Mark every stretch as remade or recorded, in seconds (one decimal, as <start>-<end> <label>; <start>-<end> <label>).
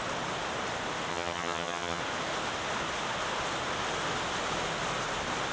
0.0-1.1 recorded; 1.1-2.0 remade; 2.0-5.5 recorded